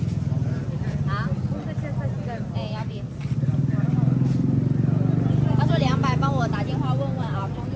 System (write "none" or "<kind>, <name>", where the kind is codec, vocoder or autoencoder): none